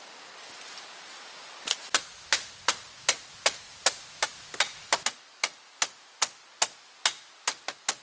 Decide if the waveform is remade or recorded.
recorded